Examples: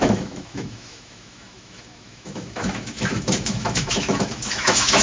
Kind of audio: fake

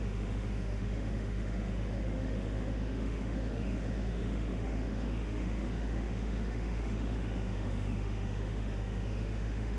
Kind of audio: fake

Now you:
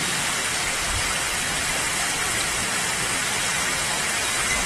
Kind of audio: real